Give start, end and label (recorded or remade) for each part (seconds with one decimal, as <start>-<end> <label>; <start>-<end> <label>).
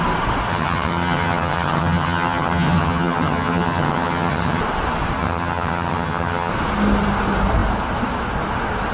0.0-0.5 recorded; 0.5-4.6 remade; 4.6-5.2 recorded; 5.2-6.5 remade; 6.5-8.9 recorded